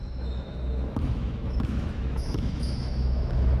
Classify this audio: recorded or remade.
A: remade